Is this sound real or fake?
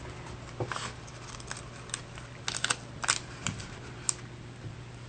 real